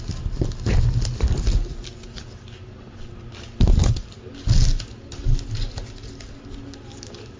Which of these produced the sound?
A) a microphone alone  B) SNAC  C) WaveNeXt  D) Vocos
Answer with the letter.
A